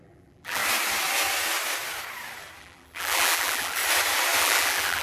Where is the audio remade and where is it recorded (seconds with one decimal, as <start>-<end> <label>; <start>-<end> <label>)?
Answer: 0.0-0.6 remade; 0.6-2.6 recorded; 2.6-3.8 remade; 3.8-4.4 recorded; 4.4-5.0 remade